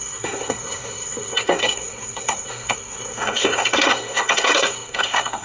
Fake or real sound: fake